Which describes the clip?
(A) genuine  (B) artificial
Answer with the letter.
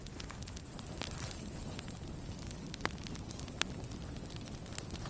A